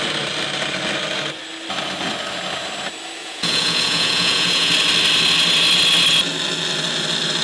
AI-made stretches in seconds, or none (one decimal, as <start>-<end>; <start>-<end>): 3.2-4.7